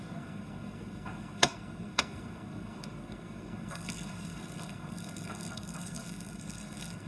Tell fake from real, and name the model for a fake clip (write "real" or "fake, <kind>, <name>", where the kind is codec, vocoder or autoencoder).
fake, codec, SNAC